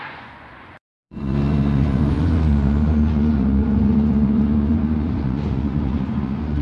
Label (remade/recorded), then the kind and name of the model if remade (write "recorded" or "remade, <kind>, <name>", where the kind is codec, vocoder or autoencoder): remade, vocoder, Vocos